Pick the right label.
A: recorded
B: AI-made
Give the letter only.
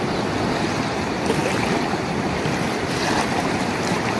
A